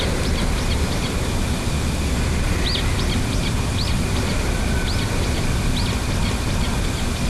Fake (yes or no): no